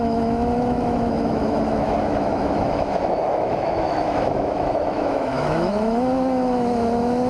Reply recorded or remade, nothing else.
remade